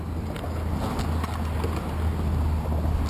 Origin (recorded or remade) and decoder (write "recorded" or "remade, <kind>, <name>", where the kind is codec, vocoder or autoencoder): recorded